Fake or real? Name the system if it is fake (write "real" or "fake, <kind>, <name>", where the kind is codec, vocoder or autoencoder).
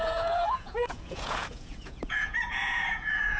fake, vocoder, Vocos